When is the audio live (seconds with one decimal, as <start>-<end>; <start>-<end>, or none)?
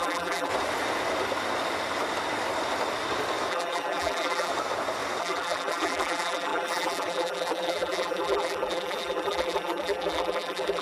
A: 0.5-3.5; 4.5-5.2